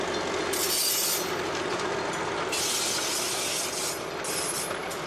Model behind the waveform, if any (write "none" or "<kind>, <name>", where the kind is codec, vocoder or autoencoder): none